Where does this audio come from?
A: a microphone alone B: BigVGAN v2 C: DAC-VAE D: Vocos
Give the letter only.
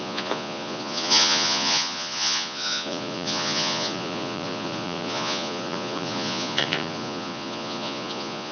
D